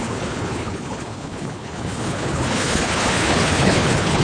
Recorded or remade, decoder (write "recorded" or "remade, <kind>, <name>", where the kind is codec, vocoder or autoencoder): remade, codec, HILCodec